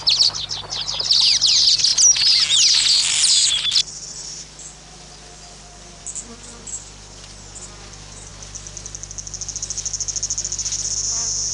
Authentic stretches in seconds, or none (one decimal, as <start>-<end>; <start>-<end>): 0.0-11.5